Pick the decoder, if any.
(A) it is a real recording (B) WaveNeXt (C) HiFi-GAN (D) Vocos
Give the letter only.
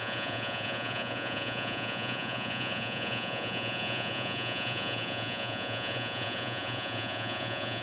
D